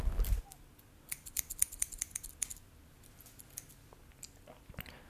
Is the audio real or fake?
real